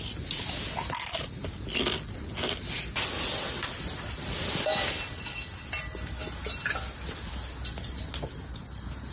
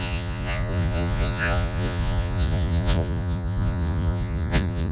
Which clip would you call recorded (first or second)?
first